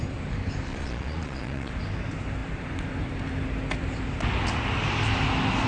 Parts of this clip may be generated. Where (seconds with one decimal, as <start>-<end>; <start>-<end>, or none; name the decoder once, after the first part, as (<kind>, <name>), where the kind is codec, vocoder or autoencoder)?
0.7-1.7 (vocoder, Vocos)